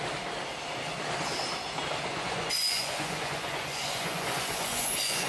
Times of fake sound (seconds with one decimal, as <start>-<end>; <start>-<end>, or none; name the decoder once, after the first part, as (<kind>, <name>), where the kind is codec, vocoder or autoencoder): 2.1-5.3 (vocoder, Vocos)